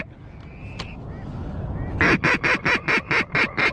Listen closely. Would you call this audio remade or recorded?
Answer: recorded